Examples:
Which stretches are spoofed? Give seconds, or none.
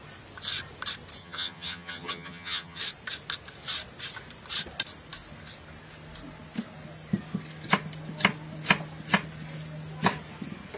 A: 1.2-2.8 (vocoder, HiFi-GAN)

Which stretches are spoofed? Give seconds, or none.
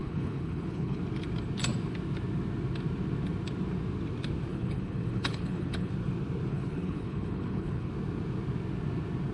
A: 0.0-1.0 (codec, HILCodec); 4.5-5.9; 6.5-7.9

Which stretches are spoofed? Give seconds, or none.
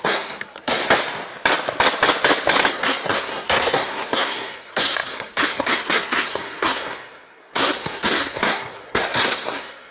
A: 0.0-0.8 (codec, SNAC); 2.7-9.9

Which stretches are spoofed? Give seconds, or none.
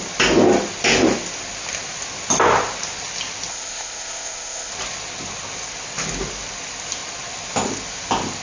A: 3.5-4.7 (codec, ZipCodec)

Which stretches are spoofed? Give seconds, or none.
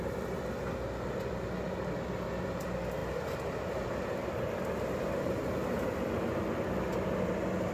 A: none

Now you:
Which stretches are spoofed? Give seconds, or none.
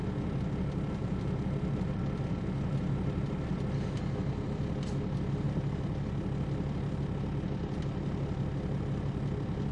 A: none